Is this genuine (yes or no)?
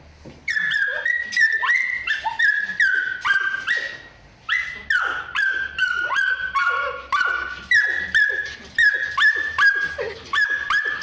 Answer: yes